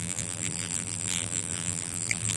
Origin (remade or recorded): remade